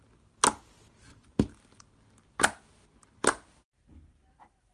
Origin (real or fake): real